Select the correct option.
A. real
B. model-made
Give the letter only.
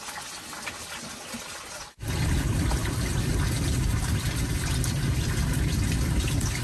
A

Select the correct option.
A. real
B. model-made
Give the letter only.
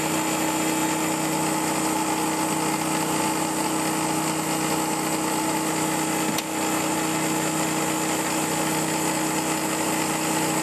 A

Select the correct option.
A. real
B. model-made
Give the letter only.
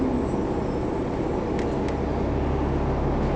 A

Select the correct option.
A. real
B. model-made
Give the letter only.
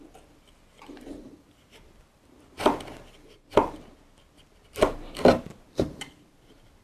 A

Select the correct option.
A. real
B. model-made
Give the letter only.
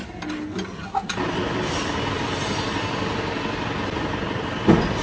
A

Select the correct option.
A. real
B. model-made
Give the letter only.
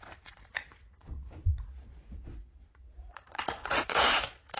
B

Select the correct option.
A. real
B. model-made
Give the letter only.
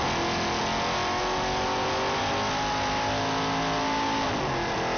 A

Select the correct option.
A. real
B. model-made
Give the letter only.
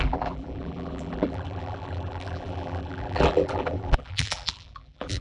B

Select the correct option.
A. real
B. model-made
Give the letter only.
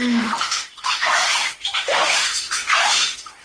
B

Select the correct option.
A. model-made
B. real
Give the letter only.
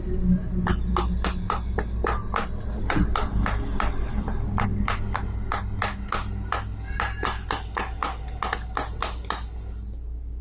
B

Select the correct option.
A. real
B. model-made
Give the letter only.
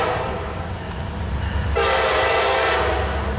A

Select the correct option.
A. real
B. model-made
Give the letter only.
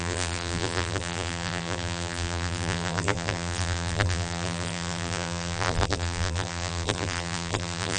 B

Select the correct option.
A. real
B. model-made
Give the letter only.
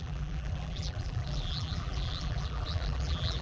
B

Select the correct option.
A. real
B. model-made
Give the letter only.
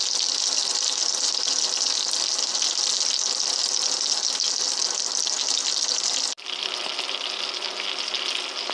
A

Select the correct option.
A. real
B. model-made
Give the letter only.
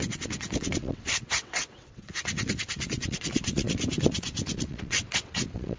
B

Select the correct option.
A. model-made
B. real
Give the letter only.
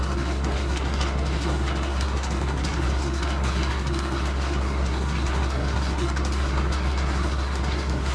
A